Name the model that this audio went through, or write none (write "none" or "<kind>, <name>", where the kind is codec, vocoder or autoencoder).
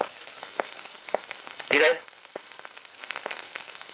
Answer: codec, SNAC